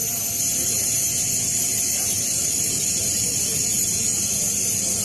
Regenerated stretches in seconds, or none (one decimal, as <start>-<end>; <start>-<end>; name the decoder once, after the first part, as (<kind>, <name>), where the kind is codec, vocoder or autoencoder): none